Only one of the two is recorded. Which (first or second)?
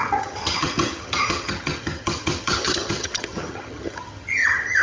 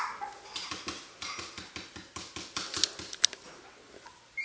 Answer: second